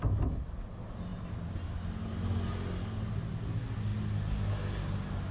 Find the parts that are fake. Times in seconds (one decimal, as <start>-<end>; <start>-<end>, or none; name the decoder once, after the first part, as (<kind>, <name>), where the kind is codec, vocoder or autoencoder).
none